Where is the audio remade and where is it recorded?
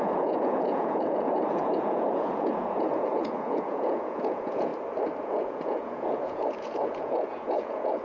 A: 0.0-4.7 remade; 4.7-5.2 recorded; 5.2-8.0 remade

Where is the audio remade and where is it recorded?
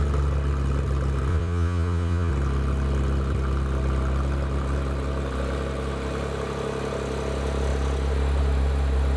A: 0.0-1.3 recorded; 1.3-2.3 remade; 2.3-9.2 recorded